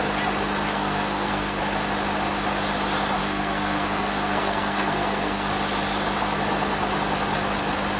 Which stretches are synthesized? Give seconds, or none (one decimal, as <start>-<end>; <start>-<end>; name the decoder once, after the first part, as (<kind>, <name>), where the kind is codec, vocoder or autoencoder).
0.7-1.6 (codec, SNAC); 3.2-5.5